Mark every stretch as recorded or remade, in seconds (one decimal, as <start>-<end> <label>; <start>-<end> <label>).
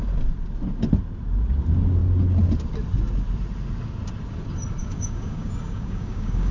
0.0-4.8 recorded; 4.8-6.5 remade